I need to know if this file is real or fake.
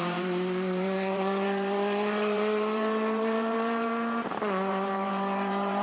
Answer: fake